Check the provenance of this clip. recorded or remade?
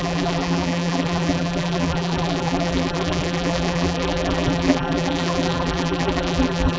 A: remade